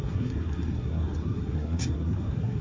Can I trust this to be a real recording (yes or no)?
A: no